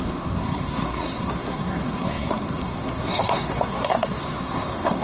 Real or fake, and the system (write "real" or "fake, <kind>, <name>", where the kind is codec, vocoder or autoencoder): fake, codec, SNAC